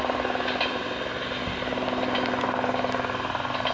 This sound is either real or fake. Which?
real